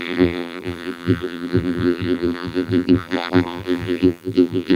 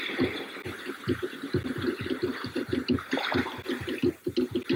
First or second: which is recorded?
second